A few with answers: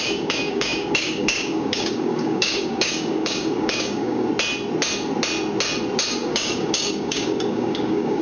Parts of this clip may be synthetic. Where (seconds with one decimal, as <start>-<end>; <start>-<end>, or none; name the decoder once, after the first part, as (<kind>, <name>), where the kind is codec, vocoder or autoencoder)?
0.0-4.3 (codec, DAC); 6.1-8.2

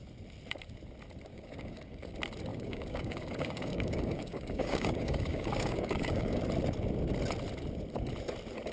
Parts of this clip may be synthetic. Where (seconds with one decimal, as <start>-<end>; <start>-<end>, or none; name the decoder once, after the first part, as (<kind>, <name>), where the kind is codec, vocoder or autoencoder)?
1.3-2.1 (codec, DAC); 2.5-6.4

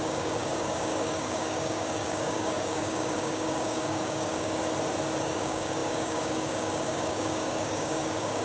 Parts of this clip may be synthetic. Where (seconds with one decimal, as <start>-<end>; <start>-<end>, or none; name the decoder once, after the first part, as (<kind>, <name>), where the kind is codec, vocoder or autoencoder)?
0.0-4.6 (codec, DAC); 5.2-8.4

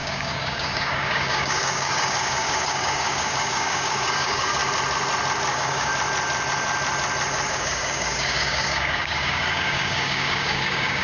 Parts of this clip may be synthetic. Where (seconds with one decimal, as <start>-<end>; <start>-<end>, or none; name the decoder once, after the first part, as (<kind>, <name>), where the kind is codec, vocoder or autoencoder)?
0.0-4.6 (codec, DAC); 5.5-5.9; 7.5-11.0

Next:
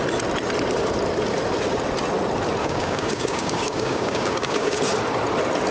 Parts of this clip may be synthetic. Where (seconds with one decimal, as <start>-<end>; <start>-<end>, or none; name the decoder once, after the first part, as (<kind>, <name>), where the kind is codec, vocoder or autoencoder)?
2.6-4.8 (codec, DAC)